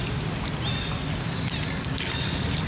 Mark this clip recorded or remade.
recorded